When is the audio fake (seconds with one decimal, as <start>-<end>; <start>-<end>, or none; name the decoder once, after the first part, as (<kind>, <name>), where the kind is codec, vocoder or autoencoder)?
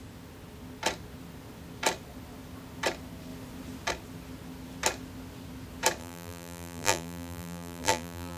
6.0-8.4 (vocoder, BigVGAN v2)